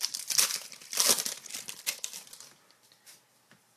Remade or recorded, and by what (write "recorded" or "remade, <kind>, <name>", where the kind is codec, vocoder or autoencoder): remade, vocoder, BigVGAN v2